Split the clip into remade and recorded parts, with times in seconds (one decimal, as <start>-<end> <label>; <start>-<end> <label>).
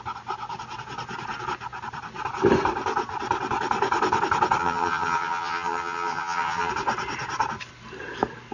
0.0-4.6 recorded; 4.6-6.7 remade; 6.7-8.5 recorded